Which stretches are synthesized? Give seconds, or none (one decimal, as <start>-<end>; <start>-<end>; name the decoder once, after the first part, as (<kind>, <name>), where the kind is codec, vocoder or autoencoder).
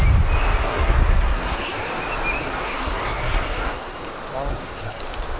0.6-1.9 (codec, SNAC); 2.4-4.1; 4.5-5.0